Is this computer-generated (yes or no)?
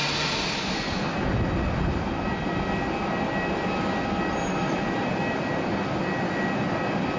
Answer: no